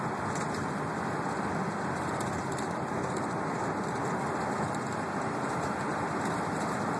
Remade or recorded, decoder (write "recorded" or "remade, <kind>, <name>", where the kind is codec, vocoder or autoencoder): recorded